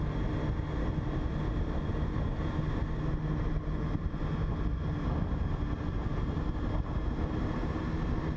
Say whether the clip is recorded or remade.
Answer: recorded